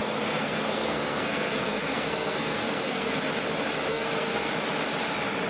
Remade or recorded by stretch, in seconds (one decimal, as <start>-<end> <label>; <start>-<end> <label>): 0.0-3.3 remade; 3.3-3.9 recorded; 3.9-4.5 remade; 4.5-5.5 recorded